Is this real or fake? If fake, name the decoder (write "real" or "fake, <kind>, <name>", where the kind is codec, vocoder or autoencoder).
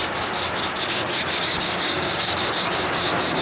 fake, codec, DAC